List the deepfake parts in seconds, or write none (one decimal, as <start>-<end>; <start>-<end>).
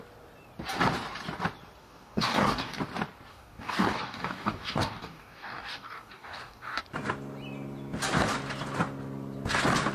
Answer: 1.8-2.8; 3.3-6.8